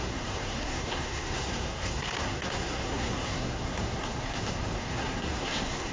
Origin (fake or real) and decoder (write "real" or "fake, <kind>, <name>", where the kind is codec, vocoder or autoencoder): fake, codec, SNAC